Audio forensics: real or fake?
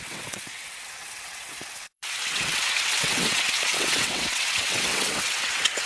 fake